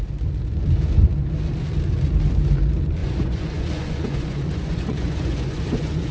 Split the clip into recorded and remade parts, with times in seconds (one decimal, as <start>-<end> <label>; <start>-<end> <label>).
0.0-3.0 recorded; 3.0-6.1 remade